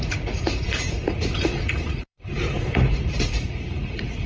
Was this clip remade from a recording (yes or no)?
yes